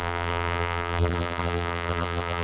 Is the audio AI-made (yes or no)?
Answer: yes